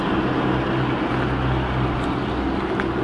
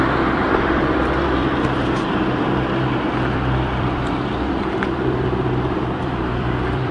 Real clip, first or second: first